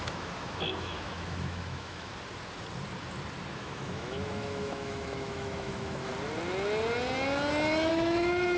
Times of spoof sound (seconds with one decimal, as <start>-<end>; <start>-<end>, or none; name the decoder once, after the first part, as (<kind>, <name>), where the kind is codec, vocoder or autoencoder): 0.0-2.1 (autoencoder, DAC-VAE); 3.5-6.1; 7.9-8.6